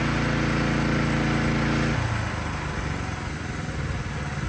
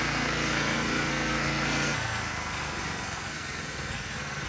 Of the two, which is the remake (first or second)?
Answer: second